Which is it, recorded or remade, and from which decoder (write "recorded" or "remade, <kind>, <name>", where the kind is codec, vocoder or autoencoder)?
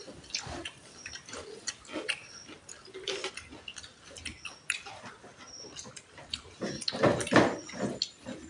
recorded